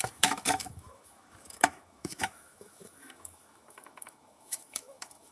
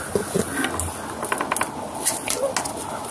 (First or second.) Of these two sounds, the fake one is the first